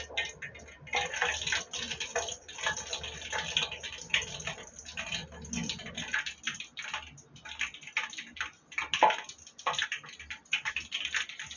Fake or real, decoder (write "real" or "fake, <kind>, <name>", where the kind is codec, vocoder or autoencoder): real